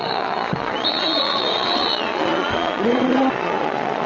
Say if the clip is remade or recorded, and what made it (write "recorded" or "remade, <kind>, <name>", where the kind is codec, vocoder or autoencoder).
remade, vocoder, Vocos